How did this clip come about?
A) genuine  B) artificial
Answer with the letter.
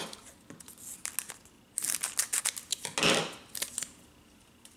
A